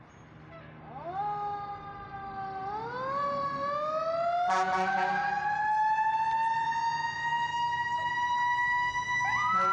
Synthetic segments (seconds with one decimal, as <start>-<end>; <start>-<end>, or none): 7.5-8.1